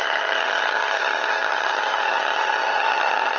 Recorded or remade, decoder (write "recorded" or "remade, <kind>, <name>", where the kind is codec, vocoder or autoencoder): remade, vocoder, HiFi-GAN